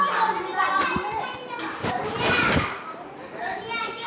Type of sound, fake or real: real